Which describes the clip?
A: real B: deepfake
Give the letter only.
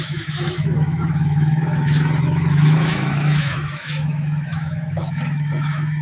B